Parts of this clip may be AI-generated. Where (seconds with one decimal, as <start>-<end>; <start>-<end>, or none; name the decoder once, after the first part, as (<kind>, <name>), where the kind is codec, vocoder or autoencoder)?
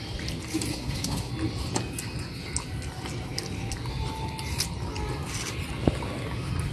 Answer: 0.7-1.3 (codec, SNAC)